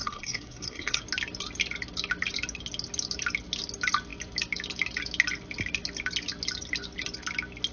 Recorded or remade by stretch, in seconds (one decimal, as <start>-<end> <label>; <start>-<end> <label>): 0.0-1.0 remade; 1.0-7.7 recorded